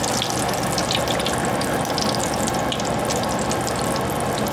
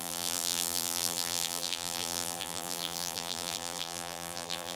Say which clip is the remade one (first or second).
second